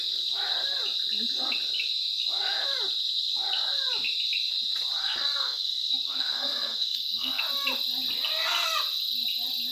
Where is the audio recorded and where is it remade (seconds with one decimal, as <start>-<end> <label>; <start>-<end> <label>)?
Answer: 0.0-5.0 recorded; 5.0-7.4 remade; 7.4-9.7 recorded